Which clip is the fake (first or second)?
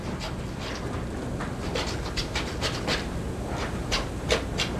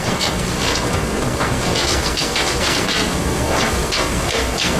second